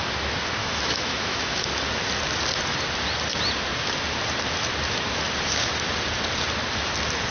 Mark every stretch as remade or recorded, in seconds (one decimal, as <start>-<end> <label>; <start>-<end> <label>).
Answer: 0.0-0.6 recorded; 0.6-1.6 remade; 1.6-7.3 recorded